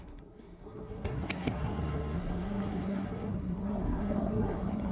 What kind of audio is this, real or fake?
fake